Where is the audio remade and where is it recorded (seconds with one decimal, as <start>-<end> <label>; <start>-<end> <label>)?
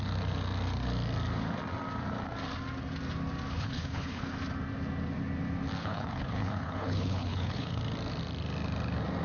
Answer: 0.0-3.5 recorded; 3.5-4.3 remade; 4.3-5.8 recorded; 5.8-7.8 remade; 7.8-9.2 recorded